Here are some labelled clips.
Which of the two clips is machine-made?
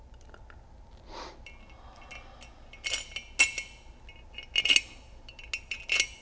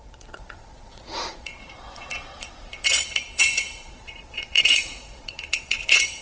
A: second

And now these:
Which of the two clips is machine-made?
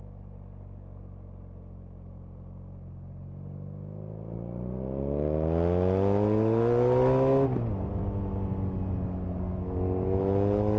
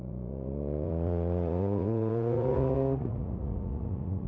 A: second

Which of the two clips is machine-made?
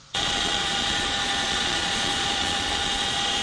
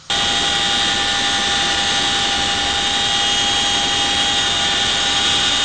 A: first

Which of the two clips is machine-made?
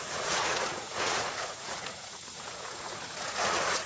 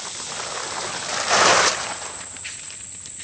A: first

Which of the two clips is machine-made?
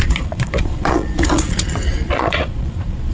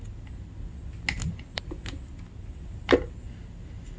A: first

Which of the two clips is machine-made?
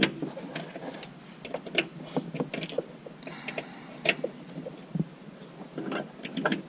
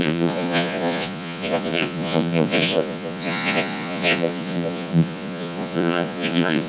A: second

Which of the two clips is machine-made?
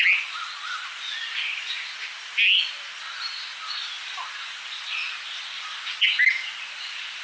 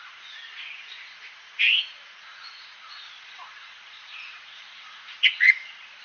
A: second